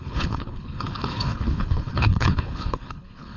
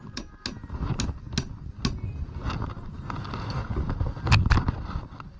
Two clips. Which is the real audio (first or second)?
second